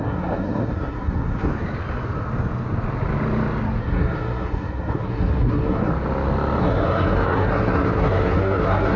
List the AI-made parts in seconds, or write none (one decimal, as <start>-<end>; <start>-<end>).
0.0-1.5; 3.8-5.9; 6.6-9.0